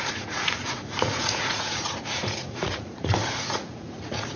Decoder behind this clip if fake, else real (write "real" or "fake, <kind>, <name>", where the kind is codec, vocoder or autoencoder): fake, vocoder, Vocos